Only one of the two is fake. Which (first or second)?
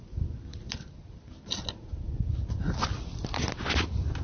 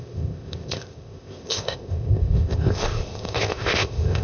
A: second